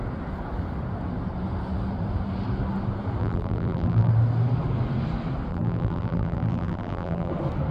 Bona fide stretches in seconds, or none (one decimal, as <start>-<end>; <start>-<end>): 0.0-3.2; 4.1-5.5; 7.3-7.7